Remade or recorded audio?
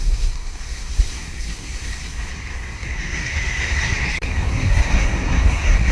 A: remade